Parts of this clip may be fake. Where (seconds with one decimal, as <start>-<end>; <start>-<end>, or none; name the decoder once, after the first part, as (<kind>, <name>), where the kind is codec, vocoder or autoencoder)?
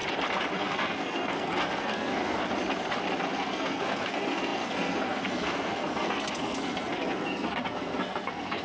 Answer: 0.6-2.4 (codec, SNAC); 3.2-8.6